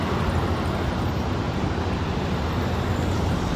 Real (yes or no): yes